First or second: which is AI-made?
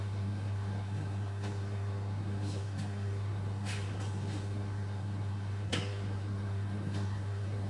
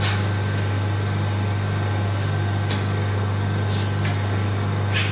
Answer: first